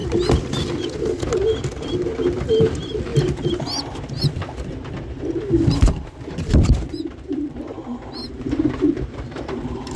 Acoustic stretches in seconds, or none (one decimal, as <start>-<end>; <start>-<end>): 0.0-2.5; 3.1-6.1; 7.7-8.3